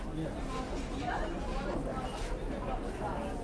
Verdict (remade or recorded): recorded